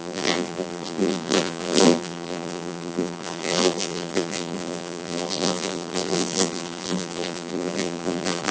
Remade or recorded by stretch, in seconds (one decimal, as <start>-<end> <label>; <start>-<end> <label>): 0.0-8.5 remade